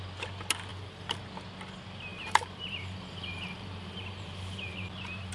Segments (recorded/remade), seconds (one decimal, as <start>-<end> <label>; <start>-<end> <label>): 0.0-0.7 recorded; 0.7-1.2 remade; 1.2-2.1 recorded; 2.1-5.3 remade